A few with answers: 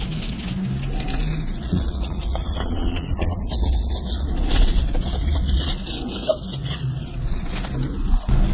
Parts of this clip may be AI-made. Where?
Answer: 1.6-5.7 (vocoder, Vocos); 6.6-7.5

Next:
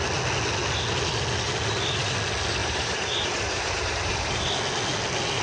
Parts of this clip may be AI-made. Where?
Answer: 2.6-4.3 (vocoder, BigVGAN v2)

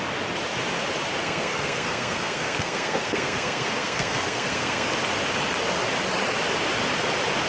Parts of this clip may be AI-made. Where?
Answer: 1.2-4.9 (codec, SNAC)

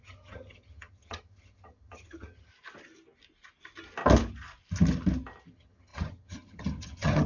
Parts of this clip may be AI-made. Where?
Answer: 0.0-2.5 (vocoder, HiFi-GAN); 5.5-7.3

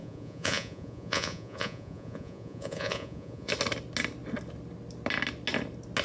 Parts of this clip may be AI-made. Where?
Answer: 0.0-3.5 (vocoder, Vocos)